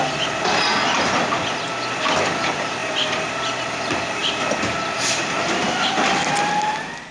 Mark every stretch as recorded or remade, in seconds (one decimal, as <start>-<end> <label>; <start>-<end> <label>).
0.0-7.1 recorded